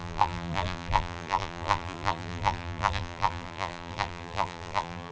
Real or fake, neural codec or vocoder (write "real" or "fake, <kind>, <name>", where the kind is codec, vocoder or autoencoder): fake, vocoder, BigVGAN v2